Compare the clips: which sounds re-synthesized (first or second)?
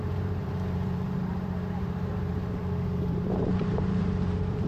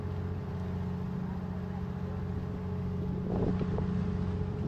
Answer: first